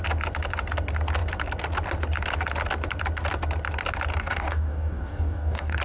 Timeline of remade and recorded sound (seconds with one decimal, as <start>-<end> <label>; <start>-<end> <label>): 0.0-4.1 recorded; 4.1-5.8 remade